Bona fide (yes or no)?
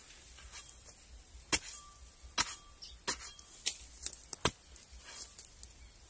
yes